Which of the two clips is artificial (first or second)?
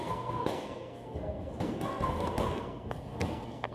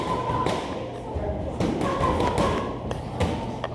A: first